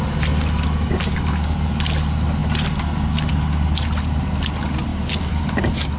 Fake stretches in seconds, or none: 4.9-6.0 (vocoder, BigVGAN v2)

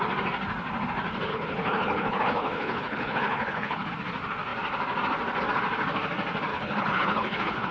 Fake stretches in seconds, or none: 1.3-3.9 (codec, HILCodec); 6.5-7.7

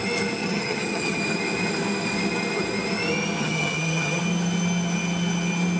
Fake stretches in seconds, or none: 0.4-1.2 (vocoder, HiFi-GAN); 3.4-4.2

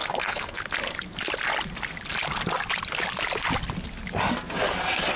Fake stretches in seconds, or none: 0.0-0.6 (codec, SNAC)

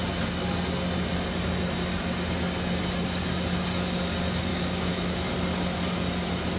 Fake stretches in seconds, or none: 4.5-5.3 (autoencoder, DAC-VAE)